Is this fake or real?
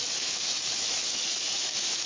fake